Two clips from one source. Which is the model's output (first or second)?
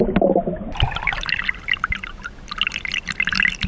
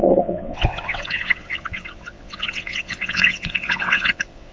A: second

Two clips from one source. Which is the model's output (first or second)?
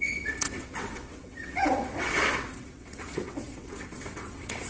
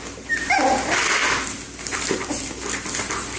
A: first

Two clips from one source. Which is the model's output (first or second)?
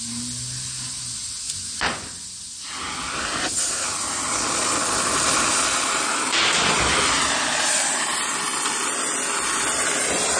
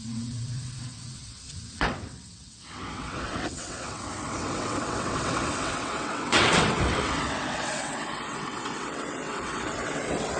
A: second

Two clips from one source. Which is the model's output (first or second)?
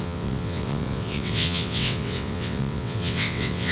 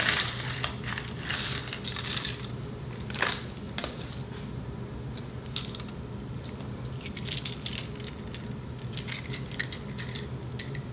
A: first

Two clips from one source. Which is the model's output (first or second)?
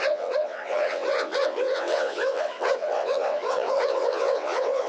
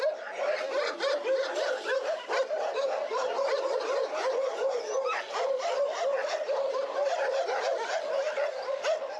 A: first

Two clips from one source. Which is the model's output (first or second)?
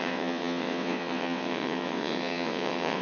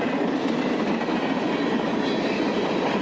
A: first